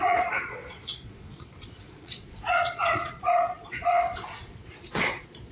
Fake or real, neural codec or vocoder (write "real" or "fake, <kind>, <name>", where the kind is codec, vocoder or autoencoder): fake, vocoder, Vocos